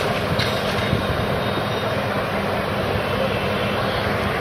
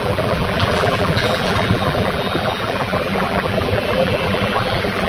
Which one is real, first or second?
first